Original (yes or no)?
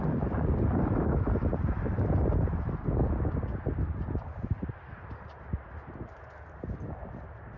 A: yes